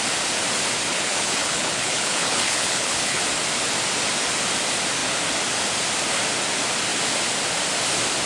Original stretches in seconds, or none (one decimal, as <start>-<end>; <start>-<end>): 0.0-0.9; 3.2-8.3